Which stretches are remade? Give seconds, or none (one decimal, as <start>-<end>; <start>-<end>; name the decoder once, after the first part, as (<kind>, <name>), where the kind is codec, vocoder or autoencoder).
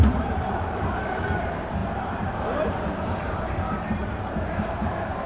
0.0-5.3 (vocoder, BigVGAN v2)